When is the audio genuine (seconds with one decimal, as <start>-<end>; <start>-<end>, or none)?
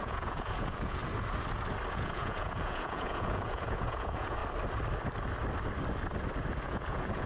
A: 1.0-1.9; 4.4-6.6